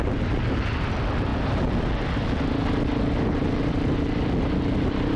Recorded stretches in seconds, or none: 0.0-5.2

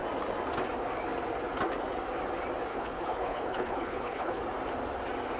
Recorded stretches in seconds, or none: 0.0-2.7; 4.4-5.4

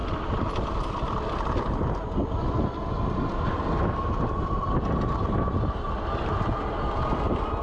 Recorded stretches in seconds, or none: 0.0-7.6